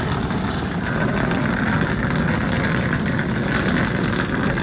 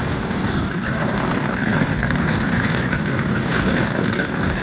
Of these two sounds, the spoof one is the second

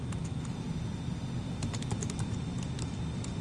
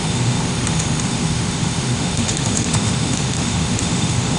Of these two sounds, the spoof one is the second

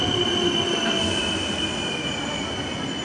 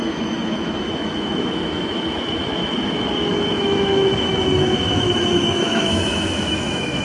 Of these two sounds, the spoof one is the second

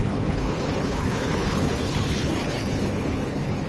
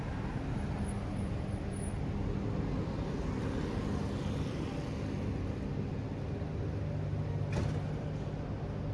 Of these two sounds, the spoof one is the first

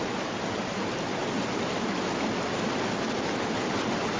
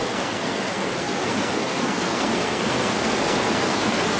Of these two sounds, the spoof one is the second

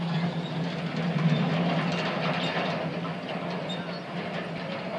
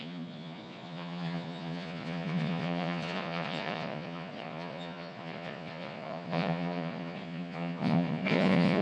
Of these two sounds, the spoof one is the second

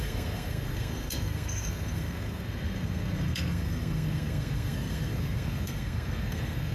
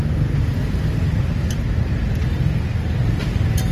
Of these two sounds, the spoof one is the first